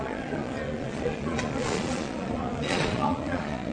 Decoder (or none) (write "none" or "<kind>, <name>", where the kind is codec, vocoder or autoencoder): vocoder, Vocos